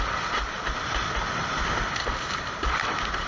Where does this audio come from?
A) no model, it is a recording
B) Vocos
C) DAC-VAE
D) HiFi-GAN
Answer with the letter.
A